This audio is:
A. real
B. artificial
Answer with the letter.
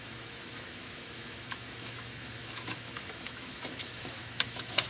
B